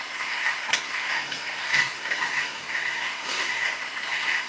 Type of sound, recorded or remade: remade